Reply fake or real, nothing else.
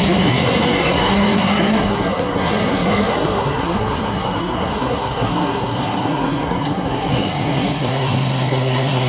fake